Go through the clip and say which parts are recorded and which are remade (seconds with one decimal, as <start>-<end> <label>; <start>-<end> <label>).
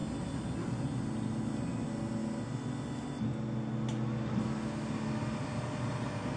0.0-6.4 recorded